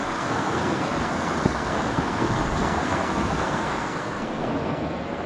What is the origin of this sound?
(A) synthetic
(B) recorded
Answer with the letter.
A